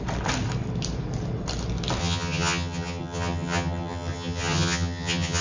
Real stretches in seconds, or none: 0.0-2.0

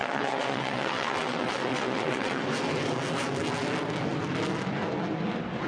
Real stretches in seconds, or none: 2.4-5.7

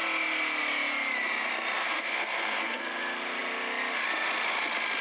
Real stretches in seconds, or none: 0.0-1.8; 2.8-5.0

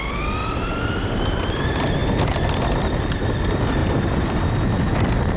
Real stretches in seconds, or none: 0.0-0.4; 1.6-3.8; 4.4-5.4

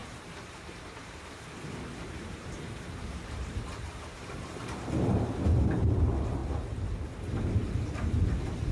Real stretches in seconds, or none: 4.6-8.7

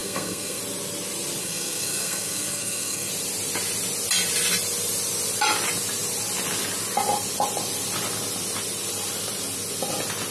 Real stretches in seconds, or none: 0.6-1.4; 3.1-10.3